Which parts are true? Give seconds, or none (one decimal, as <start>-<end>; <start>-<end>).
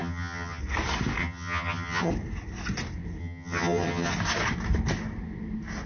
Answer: 0.6-1.2; 2.1-3.2; 4.1-5.9